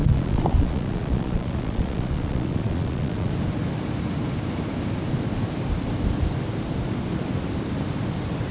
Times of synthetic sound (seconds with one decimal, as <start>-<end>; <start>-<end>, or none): 0.0-3.3